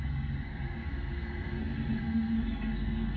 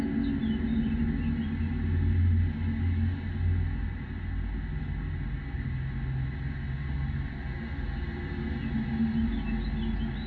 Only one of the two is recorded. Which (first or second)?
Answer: second